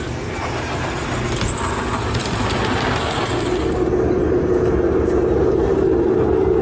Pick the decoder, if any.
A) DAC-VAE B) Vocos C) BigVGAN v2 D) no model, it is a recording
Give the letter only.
D